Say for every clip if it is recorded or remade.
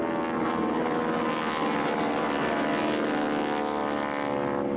recorded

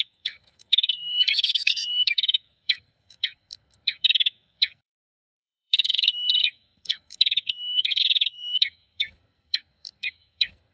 remade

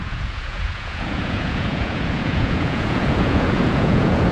remade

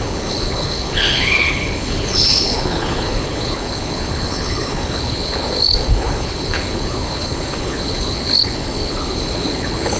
remade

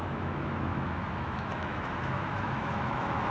remade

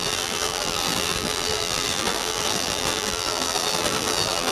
remade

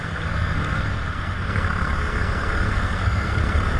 remade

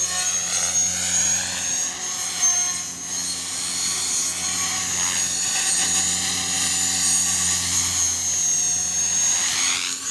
recorded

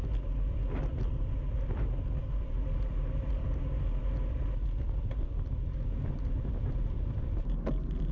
recorded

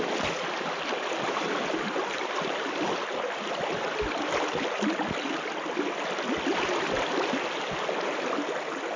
recorded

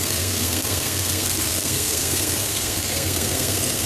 remade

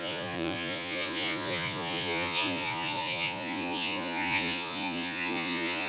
remade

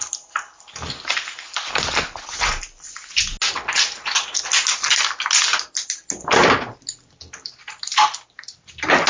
recorded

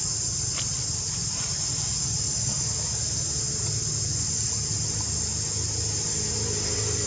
recorded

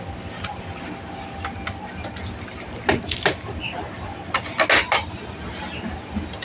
recorded